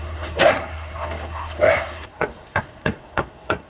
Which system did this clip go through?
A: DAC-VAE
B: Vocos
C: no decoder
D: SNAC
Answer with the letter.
D